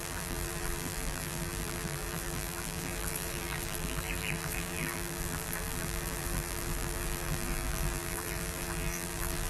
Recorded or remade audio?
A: remade